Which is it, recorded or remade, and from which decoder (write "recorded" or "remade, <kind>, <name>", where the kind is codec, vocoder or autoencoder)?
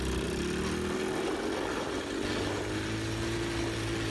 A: recorded